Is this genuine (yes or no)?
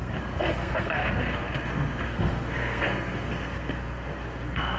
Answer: no